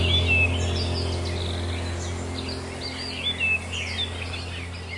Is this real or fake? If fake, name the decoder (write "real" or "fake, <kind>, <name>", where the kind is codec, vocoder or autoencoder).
real